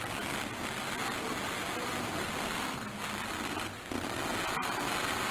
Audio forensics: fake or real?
real